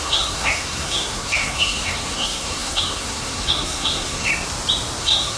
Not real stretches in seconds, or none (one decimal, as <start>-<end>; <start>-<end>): 0.0-4.3; 5.0-5.4